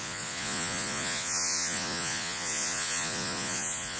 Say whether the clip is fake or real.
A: fake